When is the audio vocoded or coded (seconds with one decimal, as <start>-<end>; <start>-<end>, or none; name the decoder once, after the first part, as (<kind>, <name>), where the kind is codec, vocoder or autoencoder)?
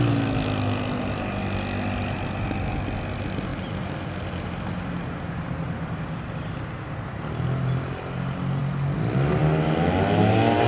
none